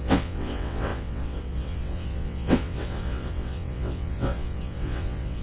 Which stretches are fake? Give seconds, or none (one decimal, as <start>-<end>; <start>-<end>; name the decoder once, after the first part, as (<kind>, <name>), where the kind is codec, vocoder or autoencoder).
0.0-5.4 (vocoder, WaveNeXt)